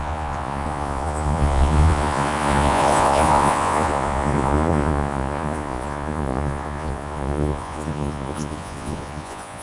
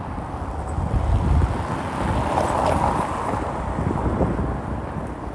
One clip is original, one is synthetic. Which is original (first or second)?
second